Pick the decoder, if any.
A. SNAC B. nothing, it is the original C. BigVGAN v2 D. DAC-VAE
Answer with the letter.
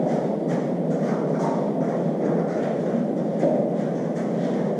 B